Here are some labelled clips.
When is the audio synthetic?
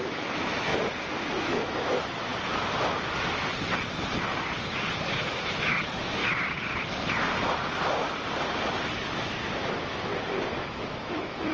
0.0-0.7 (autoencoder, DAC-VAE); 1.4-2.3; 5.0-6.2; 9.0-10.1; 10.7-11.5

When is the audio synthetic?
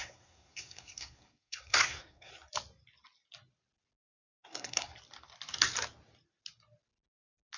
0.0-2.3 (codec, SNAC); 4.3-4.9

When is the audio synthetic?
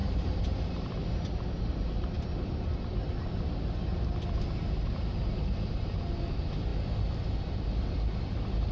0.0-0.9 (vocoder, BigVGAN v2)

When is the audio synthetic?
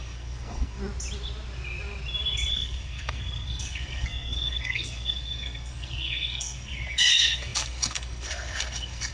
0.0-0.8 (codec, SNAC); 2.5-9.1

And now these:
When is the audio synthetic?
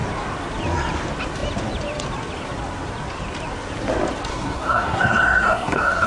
4.3-6.1 (codec, SNAC)